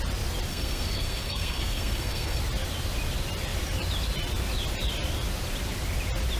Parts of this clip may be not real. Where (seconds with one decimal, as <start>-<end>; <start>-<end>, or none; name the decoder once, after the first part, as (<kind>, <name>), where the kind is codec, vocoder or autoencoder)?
0.5-2.4 (codec, SNAC)